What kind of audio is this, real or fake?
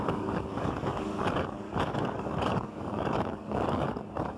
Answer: fake